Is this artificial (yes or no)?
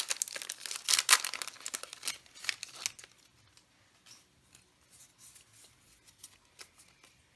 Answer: no